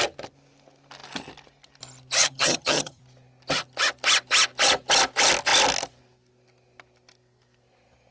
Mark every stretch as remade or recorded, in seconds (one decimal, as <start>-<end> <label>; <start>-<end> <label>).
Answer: 0.0-2.2 recorded; 2.2-3.0 remade; 3.0-8.1 recorded